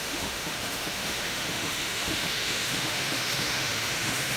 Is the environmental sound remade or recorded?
remade